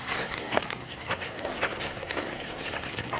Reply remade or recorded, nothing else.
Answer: remade